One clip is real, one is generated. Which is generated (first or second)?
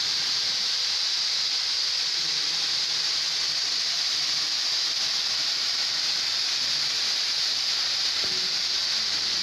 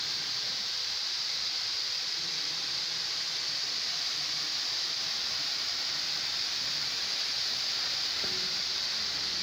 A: second